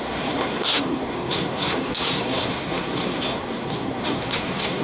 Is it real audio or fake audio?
fake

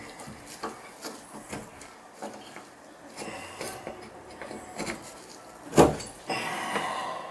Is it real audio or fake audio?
real